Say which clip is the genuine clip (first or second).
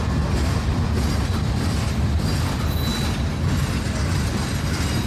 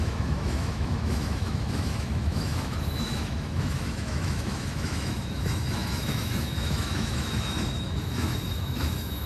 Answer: first